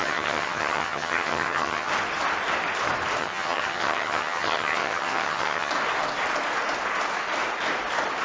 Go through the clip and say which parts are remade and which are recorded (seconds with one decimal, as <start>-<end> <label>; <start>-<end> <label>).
0.0-1.9 remade; 1.9-3.2 recorded; 3.2-5.7 remade; 5.7-8.2 recorded